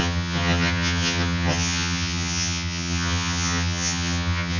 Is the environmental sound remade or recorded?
remade